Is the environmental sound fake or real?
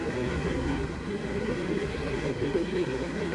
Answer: fake